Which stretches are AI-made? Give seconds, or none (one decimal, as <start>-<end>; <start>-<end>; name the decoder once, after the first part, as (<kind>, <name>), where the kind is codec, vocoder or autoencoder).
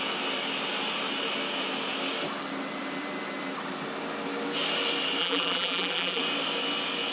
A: 5.2-6.2 (vocoder, BigVGAN v2)